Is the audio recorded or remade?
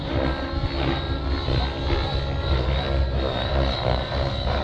recorded